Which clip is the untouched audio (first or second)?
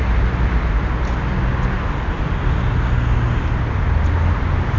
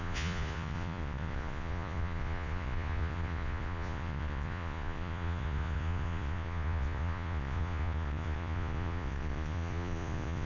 first